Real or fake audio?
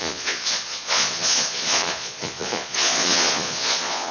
fake